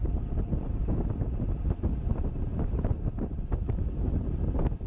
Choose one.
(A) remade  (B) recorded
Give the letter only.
B